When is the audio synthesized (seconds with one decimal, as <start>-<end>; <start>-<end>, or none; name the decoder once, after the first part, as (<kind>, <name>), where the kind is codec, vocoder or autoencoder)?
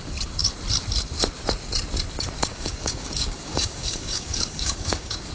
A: 2.5-5.3 (codec, DAC)